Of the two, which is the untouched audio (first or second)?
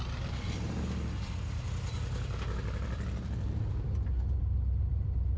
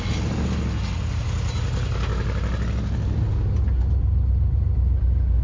second